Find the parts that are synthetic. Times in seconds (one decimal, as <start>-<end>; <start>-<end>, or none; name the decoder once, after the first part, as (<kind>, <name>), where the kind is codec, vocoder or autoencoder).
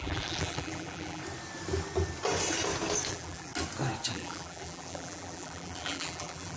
0.0-1.2 (vocoder, BigVGAN v2); 3.1-3.5; 4.1-6.6